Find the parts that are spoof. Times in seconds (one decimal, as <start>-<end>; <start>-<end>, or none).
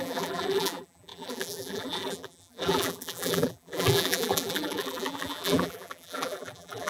0.0-6.9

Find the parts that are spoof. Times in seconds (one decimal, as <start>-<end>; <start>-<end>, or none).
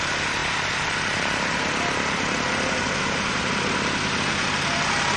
0.4-3.5; 4.4-5.2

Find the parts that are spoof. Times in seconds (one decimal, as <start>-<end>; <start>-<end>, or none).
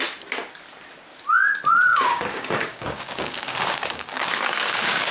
1.9-5.1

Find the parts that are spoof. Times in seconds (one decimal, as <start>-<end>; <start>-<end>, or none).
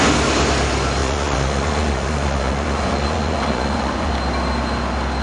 1.0-4.1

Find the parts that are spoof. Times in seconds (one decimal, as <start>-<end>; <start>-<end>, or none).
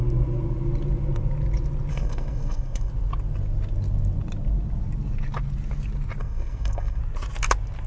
1.9-2.9; 6.2-7.0